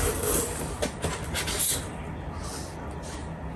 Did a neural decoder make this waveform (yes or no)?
no